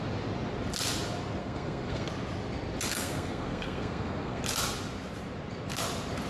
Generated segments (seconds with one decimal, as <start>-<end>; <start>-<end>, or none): 1.4-2.1; 2.9-4.4

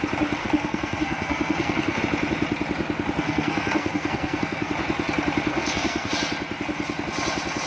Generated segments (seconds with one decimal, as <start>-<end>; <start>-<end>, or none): 0.4-2.0; 3.2-4.7; 5.5-6.1

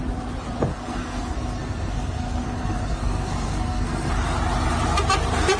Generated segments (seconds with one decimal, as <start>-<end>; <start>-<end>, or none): 0.7-4.1

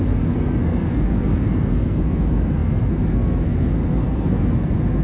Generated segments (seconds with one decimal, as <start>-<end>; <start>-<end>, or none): 0.0-5.0

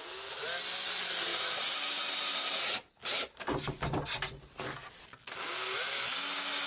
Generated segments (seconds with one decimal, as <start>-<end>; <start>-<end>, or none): none

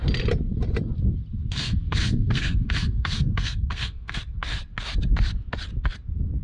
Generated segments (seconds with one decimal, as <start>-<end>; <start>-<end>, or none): 1.3-4.2

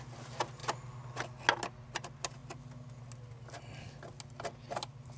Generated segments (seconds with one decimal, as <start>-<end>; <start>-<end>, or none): none